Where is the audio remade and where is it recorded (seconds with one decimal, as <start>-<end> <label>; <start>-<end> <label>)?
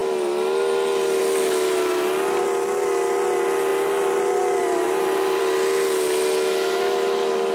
0.0-3.7 recorded; 3.7-5.4 remade; 5.4-7.5 recorded